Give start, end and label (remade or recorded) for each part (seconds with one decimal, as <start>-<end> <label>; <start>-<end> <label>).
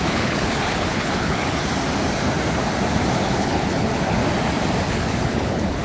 0.0-1.6 remade; 1.6-3.2 recorded; 3.2-4.2 remade; 4.2-4.9 recorded; 4.9-5.8 remade